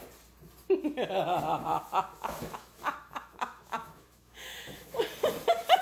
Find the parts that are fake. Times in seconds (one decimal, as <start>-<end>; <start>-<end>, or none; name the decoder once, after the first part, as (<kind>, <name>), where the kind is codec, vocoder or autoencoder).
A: 1.6-5.0 (autoencoder, DAC-VAE)

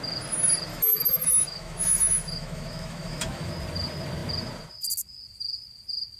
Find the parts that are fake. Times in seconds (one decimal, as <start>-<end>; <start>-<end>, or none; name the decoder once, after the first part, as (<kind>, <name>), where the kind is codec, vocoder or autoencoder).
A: 0.7-3.5 (autoencoder, DAC-VAE)

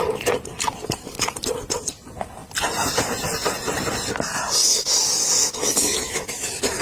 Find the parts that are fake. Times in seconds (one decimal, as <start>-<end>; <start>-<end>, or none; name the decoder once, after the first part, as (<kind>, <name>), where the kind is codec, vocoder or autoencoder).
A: 4.6-6.8 (autoencoder, DAC-VAE)

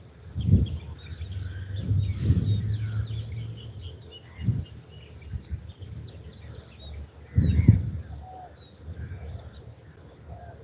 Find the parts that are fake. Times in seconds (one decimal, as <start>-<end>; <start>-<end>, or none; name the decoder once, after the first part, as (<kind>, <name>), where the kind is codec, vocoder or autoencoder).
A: none